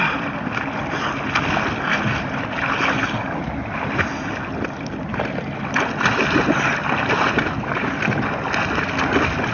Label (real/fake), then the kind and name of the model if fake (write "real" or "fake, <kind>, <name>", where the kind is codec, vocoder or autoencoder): real